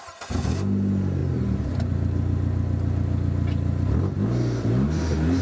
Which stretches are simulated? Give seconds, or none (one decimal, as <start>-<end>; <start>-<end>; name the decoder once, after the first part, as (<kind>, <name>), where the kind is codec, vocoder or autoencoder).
none